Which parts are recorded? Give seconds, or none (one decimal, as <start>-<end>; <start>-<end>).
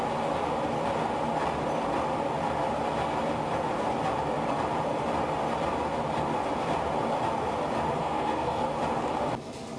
0.0-8.0; 8.6-9.8